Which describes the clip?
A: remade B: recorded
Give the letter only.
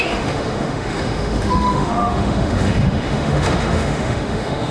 A